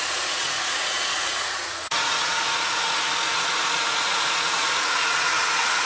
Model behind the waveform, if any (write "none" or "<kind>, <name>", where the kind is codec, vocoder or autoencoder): vocoder, Vocos